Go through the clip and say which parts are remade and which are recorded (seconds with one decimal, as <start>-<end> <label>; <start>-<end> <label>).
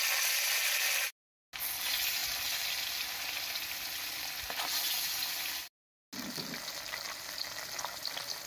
0.0-8.5 recorded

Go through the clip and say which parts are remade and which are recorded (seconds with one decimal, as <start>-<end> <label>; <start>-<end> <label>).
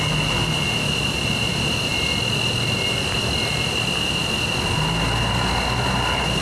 0.0-6.4 recorded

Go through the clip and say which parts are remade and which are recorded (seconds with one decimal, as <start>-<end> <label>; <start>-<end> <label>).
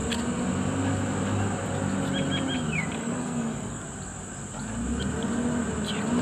0.0-3.0 recorded; 3.0-3.8 remade; 3.8-6.2 recorded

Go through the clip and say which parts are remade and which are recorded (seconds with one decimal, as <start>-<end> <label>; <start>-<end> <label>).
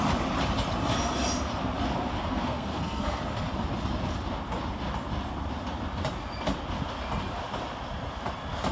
0.0-2.2 recorded; 2.2-3.2 remade; 3.2-8.7 recorded